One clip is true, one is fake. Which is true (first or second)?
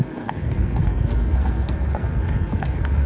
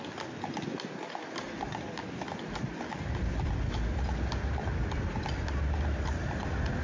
second